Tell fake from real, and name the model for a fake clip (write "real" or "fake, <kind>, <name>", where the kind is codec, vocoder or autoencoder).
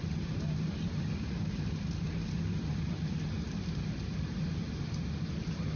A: real